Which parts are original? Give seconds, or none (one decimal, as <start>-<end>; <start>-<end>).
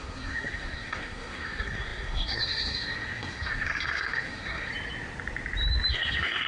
4.7-5.9